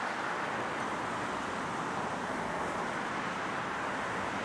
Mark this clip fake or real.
real